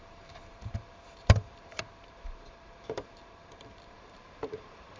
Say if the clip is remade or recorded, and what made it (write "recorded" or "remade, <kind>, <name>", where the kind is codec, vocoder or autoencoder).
remade, vocoder, BigVGAN v2